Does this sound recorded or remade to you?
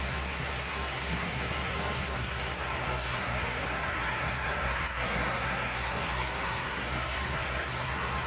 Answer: remade